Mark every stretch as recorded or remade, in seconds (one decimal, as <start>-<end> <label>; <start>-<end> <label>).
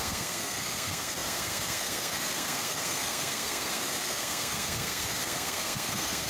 0.0-6.3 remade